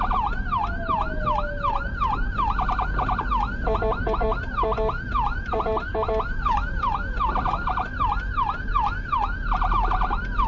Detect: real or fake real